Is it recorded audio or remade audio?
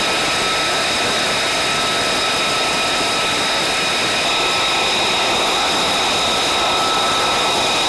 recorded